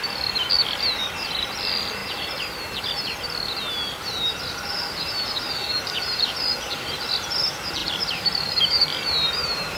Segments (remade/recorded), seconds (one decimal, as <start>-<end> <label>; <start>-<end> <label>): 0.0-5.6 recorded; 5.6-6.4 remade; 6.4-7.8 recorded; 7.8-9.8 remade